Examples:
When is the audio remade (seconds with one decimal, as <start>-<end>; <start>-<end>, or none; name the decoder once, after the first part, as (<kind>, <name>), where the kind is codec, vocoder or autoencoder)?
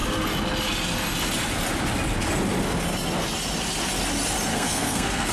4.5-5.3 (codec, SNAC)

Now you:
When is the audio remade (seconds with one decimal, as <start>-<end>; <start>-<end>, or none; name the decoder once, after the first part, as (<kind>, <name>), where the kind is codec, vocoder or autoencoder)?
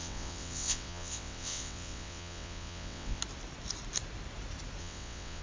0.0-3.2 (vocoder, WaveNeXt); 4.8-5.4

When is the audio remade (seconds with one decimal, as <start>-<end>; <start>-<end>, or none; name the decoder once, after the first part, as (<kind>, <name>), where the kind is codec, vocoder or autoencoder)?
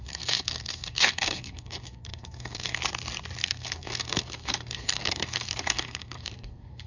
0.0-2.8 (codec, SNAC); 3.4-6.9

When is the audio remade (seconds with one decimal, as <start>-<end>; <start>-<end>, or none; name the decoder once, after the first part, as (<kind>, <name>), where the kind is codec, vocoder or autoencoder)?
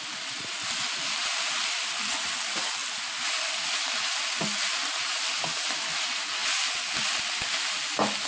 none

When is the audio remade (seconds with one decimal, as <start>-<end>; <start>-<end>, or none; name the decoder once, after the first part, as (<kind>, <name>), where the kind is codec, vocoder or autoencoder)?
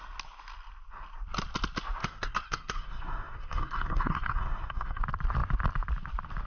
2.0-5.0 (codec, SNAC)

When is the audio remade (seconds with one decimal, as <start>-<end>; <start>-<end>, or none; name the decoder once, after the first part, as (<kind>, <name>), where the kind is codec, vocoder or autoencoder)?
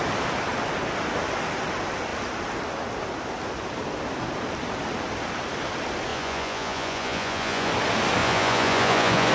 6.1-7.7 (vocoder, Vocos); 8.2-9.3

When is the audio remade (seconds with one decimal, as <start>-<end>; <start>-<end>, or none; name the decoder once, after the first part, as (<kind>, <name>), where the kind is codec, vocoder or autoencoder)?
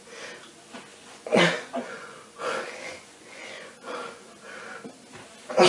0.9-4.3 (vocoder, Vocos)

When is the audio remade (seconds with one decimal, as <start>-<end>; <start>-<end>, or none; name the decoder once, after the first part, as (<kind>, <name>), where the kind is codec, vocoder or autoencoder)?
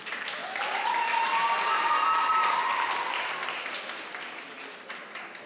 0.0-0.4 (vocoder, BigVGAN v2); 2.2-3.4; 4.3-5.5